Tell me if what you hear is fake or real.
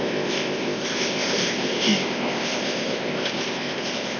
fake